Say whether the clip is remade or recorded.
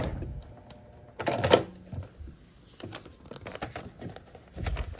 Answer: recorded